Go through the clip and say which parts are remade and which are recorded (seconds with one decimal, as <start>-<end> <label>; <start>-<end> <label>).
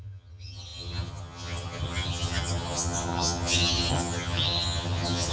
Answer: 0.0-5.3 remade